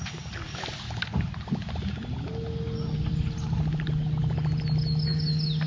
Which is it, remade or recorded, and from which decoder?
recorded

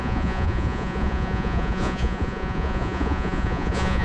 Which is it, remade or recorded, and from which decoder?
remade, vocoder, Vocos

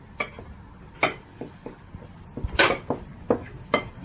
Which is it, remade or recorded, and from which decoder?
recorded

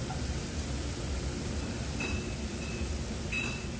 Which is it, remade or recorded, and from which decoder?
recorded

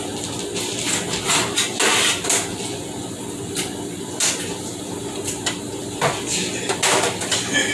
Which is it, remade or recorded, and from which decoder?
recorded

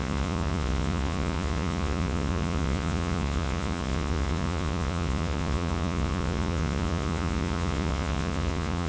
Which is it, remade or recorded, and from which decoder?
remade, vocoder, Vocos